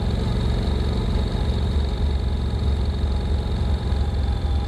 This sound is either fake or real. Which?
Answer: real